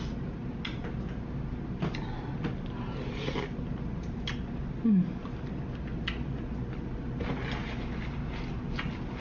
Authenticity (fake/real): real